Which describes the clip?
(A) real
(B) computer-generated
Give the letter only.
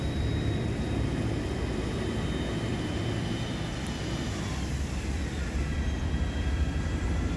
B